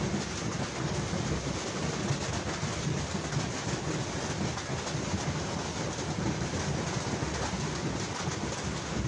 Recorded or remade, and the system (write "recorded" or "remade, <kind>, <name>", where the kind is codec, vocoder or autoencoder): recorded